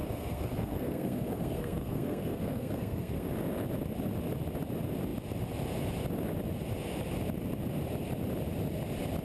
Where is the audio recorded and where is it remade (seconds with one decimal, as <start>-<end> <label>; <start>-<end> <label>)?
0.0-3.3 remade; 3.3-9.2 recorded